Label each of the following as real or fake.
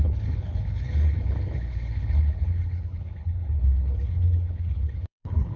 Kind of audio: fake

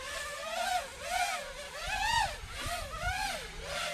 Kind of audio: real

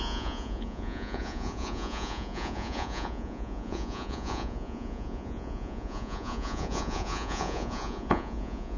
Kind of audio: fake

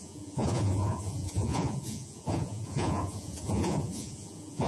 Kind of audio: fake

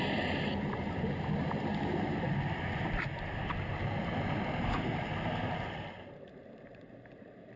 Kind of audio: real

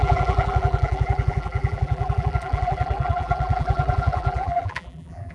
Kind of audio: fake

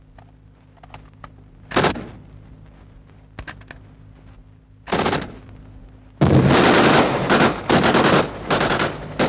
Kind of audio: real